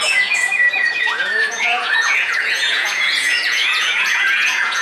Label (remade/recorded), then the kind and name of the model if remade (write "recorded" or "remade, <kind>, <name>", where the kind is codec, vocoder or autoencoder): remade, vocoder, Vocos